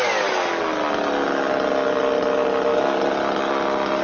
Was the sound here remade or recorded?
recorded